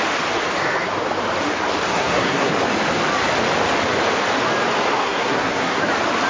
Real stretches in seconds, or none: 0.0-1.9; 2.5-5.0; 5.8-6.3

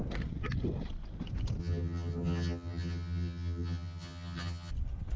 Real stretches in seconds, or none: 0.0-1.6; 4.7-5.2

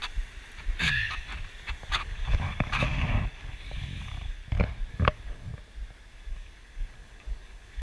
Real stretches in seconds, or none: 0.0-0.8; 1.3-1.9; 4.4-4.9; 5.5-6.2

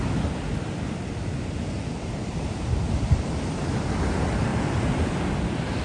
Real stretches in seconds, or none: 0.0-5.8

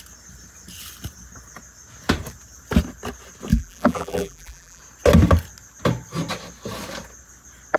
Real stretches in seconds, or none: 0.0-3.5; 4.8-7.8